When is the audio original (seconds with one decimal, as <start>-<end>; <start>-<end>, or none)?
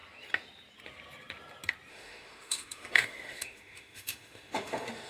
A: 0.0-1.9